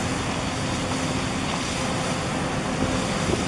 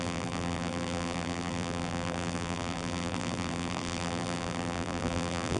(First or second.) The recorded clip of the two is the first